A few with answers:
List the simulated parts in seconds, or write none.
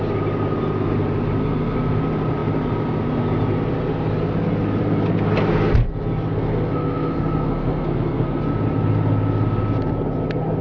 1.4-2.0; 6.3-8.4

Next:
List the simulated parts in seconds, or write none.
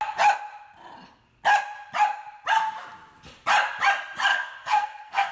4.3-5.3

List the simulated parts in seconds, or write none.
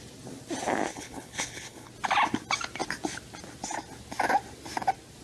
0.9-1.9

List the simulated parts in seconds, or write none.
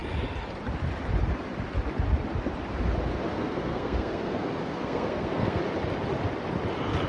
3.3-5.6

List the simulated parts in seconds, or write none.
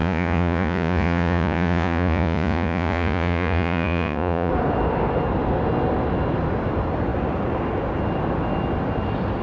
0.0-4.5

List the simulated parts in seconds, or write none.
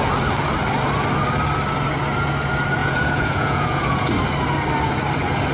2.8-4.1